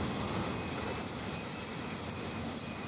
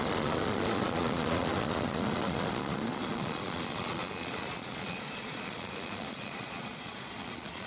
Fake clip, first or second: second